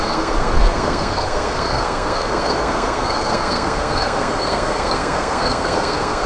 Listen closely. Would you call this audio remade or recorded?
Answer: remade